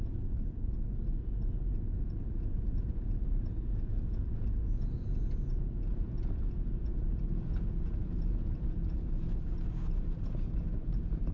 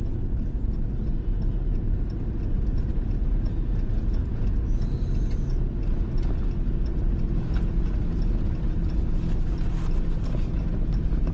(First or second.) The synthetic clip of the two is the first